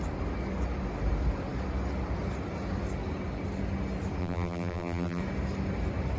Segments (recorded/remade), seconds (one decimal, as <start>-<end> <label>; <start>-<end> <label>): 0.0-4.2 recorded; 4.2-5.2 remade; 5.2-6.2 recorded